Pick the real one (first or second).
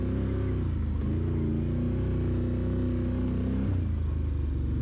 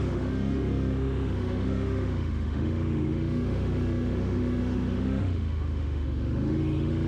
first